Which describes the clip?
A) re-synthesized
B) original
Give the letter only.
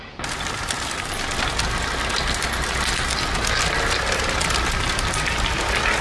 B